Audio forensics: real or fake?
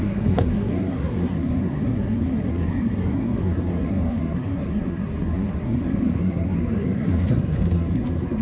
fake